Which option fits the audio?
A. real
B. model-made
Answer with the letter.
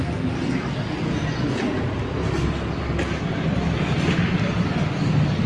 A